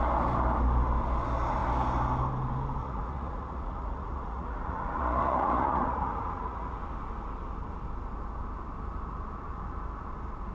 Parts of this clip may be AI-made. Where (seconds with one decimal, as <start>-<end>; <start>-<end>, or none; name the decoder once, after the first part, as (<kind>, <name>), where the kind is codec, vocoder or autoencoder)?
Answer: 2.8-6.8 (vocoder, Vocos)